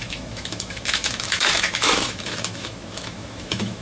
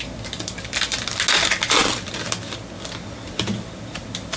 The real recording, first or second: second